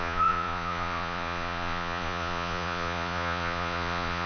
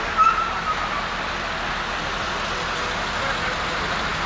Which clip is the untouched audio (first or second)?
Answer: second